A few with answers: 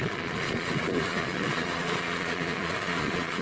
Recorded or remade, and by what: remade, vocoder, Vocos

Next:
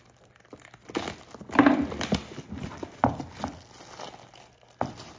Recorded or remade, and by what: recorded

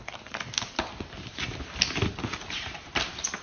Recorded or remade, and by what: recorded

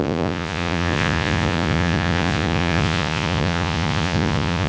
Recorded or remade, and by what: remade, vocoder, Vocos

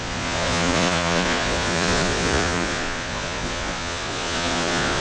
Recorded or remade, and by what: remade, vocoder, Vocos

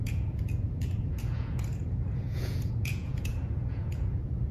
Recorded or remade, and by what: remade, vocoder, Vocos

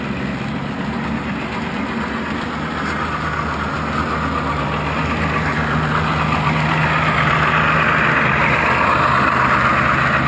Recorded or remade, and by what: recorded